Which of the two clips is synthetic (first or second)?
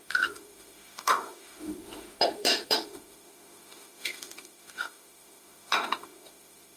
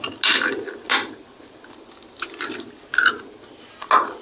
first